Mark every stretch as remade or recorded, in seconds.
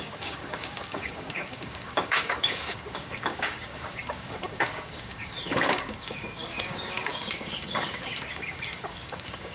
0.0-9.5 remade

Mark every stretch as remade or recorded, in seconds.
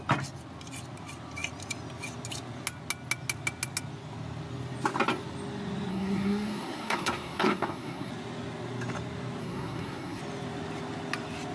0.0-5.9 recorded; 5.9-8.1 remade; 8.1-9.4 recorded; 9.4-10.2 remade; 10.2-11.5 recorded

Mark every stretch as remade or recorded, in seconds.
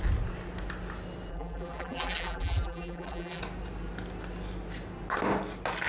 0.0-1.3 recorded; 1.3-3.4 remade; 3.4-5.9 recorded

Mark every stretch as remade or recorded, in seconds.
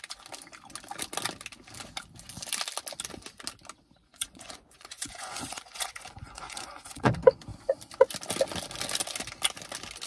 0.0-4.0 recorded; 4.0-7.1 remade; 7.1-10.1 recorded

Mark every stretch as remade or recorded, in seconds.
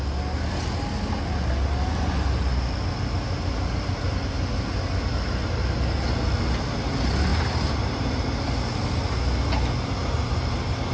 0.0-7.3 recorded; 7.3-8.4 remade; 8.4-10.9 recorded